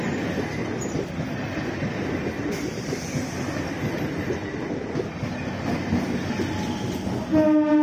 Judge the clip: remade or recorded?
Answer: recorded